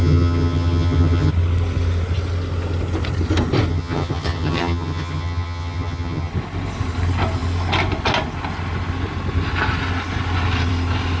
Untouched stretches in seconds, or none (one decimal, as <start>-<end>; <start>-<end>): 1.3-3.7; 6.3-11.2